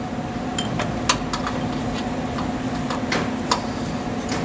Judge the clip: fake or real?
real